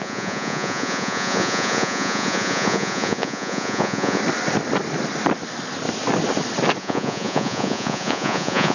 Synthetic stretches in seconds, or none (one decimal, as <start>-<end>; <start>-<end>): 0.0-4.2; 6.8-8.7